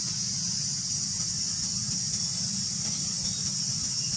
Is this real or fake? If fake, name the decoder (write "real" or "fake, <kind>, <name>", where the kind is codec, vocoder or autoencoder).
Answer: real